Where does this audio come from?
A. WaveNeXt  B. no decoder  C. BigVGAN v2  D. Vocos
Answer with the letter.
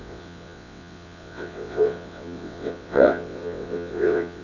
A